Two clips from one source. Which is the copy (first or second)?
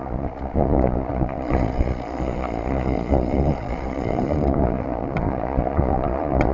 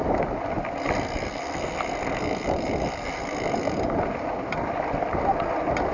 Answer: first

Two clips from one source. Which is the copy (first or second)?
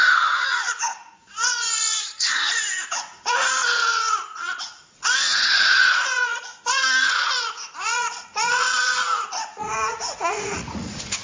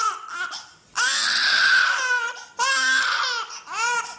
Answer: first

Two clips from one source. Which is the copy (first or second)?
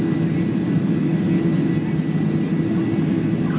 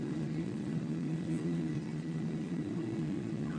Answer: second